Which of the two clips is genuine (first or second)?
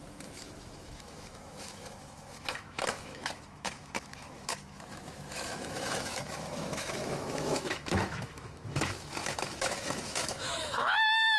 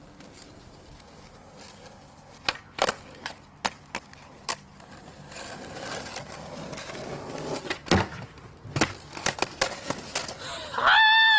second